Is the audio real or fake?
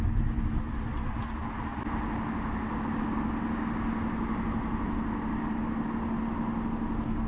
real